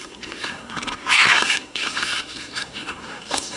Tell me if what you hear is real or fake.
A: fake